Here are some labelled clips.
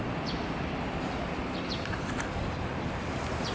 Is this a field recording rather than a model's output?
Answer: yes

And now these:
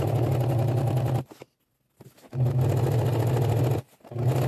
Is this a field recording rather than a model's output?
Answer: yes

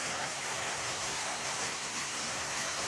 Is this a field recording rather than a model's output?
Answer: no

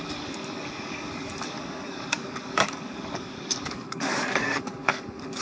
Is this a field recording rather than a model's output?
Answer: no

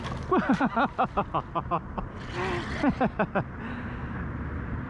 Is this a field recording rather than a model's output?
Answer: yes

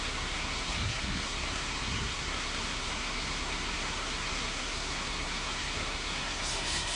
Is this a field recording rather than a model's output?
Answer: no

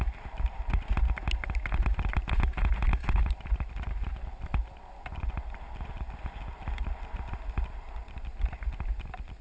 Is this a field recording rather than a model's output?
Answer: yes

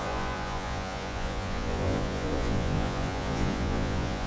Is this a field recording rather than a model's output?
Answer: no